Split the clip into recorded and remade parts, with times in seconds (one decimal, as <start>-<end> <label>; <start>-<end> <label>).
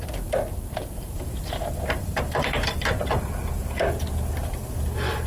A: 0.0-0.7 recorded; 0.7-3.9 remade; 3.9-5.3 recorded